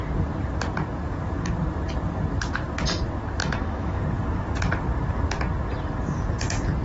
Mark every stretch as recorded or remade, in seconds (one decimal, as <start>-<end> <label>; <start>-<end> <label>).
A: 0.0-3.4 recorded; 3.4-4.0 remade; 4.0-6.8 recorded